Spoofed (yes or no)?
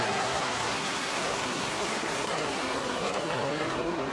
yes